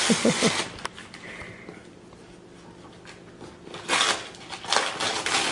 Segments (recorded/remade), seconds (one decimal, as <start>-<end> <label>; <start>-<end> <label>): 0.0-5.5 recorded